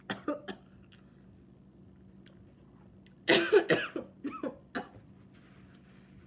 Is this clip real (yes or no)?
yes